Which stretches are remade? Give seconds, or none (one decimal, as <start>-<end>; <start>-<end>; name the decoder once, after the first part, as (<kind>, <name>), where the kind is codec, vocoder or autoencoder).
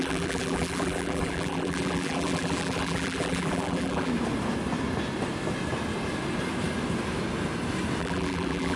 0.0-4.1 (vocoder, BigVGAN v2); 8.0-8.8